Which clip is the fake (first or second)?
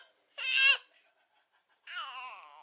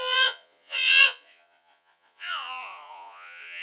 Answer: second